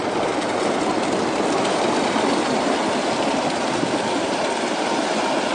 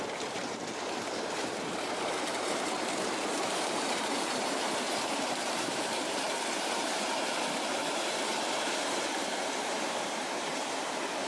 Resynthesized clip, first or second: second